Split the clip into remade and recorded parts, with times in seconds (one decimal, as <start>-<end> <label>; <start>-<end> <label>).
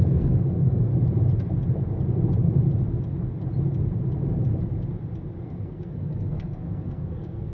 0.0-0.9 remade; 0.9-5.4 recorded; 5.4-7.5 remade